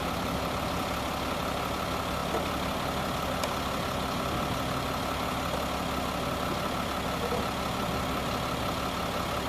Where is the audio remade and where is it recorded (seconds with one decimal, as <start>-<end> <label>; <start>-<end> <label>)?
0.0-9.5 recorded